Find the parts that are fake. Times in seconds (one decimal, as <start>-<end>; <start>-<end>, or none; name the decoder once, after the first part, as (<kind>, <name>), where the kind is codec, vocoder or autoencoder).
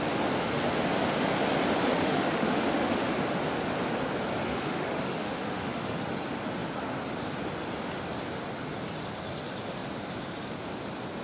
1.9-3.0 (autoencoder, DAC-VAE); 4.4-6.1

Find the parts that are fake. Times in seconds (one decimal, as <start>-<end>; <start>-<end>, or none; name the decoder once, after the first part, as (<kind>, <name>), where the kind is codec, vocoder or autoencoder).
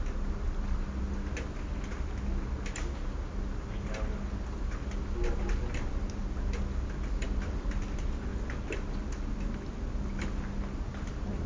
none